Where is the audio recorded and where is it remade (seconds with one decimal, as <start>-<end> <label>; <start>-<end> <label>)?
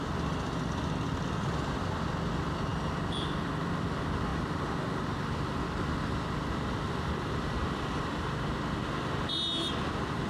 0.0-10.3 recorded